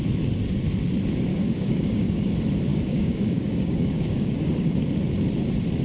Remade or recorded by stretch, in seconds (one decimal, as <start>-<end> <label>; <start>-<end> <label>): 0.0-1.3 recorded; 1.3-2.3 remade; 2.3-2.7 recorded; 2.7-4.9 remade; 4.9-5.8 recorded

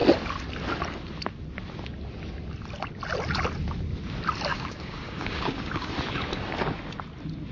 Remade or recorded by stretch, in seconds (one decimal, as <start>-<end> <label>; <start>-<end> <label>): 0.0-4.5 recorded; 4.5-5.9 remade; 5.9-7.5 recorded

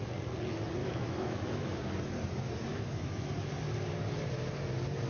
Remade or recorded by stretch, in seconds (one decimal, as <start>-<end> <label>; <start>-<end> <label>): 0.0-0.8 recorded; 0.8-1.8 remade; 1.8-2.7 recorded; 2.7-3.3 remade; 3.3-5.1 recorded

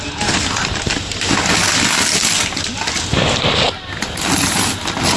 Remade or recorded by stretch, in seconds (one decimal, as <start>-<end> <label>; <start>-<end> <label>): 0.0-5.2 recorded

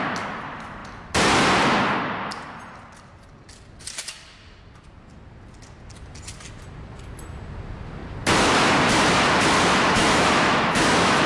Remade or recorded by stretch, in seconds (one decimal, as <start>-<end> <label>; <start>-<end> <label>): 0.0-10.0 recorded; 10.0-11.3 remade

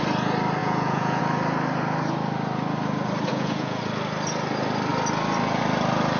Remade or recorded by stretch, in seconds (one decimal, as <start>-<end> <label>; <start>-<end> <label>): 0.0-0.6 recorded; 0.6-1.2 remade; 1.2-3.3 recorded; 3.3-3.8 remade; 3.8-6.2 recorded